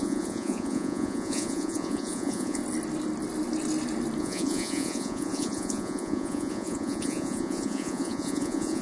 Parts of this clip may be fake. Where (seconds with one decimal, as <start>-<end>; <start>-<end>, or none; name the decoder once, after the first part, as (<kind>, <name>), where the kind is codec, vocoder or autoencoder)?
0.0-2.6 (vocoder, Vocos); 4.2-8.8